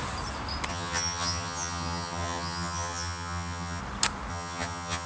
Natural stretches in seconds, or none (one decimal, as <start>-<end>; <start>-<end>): 0.0-0.7; 3.8-4.3